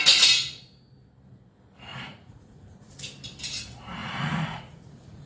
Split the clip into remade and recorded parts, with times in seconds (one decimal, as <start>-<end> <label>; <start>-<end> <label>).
0.0-1.9 recorded; 1.9-3.0 remade; 3.0-4.0 recorded; 4.0-5.3 remade